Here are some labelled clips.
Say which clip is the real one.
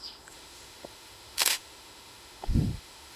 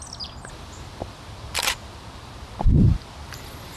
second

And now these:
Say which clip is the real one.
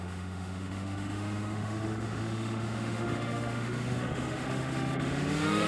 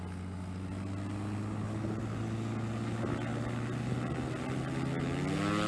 second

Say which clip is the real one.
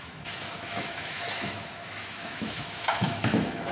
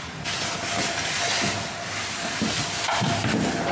second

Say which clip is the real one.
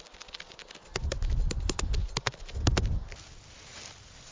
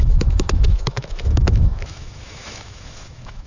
first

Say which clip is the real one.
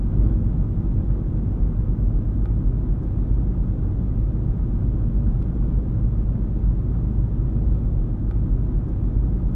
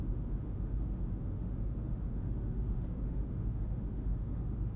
first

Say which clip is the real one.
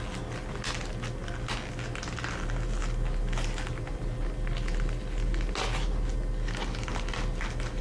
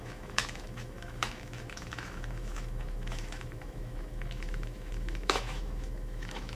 first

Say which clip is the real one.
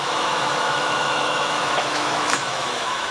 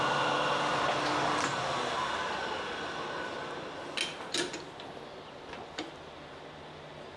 second